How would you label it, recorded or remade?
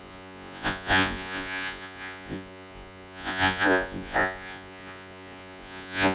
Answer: remade